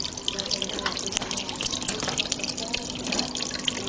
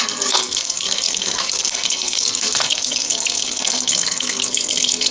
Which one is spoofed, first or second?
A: second